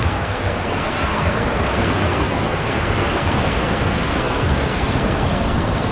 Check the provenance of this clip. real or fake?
fake